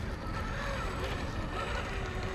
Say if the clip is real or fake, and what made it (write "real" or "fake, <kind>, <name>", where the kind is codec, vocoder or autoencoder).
real